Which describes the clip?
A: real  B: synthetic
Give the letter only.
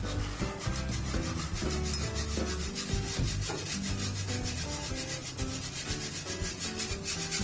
A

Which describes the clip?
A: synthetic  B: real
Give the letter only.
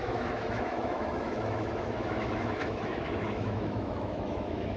A